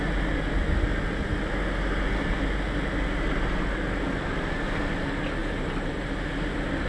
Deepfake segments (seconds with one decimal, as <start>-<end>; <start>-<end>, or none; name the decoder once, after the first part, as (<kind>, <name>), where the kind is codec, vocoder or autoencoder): 5.4-6.3 (vocoder, BigVGAN v2)